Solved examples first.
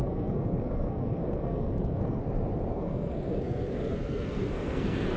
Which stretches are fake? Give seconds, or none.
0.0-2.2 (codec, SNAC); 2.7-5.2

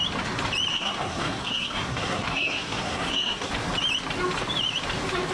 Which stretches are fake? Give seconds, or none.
0.7-3.5 (codec, SNAC)

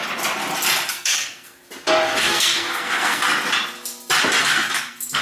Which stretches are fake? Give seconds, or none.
0.9-1.6 (codec, SNAC); 2.2-3.3; 4.4-5.2

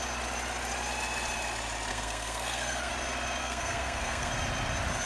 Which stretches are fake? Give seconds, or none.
1.9-2.9 (codec, SNAC); 3.4-4.3

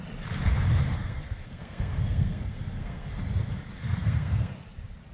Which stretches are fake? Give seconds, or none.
1.0-3.1 (codec, SNAC); 4.0-4.5

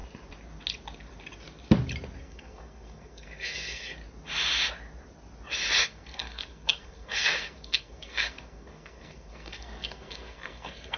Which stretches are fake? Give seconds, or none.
2.2-3.9 (codec, SNAC); 5.8-11.0

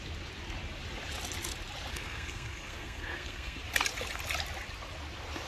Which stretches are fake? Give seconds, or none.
1.9-3.6 (codec, SNAC)